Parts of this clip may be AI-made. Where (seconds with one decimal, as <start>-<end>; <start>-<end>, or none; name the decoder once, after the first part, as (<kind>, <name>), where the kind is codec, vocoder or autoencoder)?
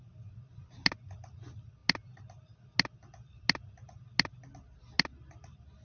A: none